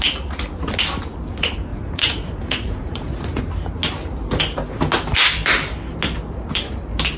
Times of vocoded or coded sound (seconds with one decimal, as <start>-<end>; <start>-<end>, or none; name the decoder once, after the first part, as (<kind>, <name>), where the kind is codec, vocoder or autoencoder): 1.7-3.4 (vocoder, Vocos)